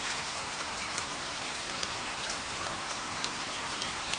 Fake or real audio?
fake